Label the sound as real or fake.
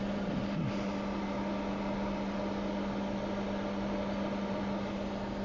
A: real